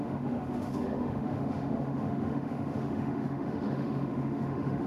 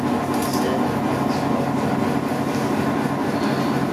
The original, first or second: second